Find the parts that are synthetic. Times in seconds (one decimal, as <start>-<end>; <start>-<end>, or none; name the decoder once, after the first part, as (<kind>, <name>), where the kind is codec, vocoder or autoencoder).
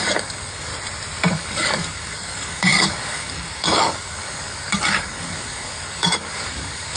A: 0.0-0.7 (codec, DAC); 1.3-7.0